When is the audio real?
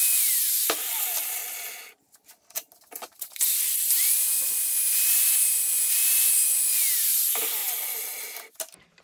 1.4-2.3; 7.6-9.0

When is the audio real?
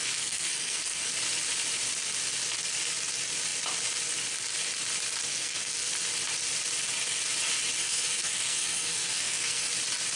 1.1-5.3; 5.9-7.8; 9.7-10.2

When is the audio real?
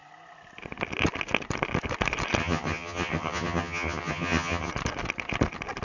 0.0-2.4; 4.7-5.8